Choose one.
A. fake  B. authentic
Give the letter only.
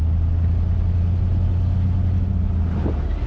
B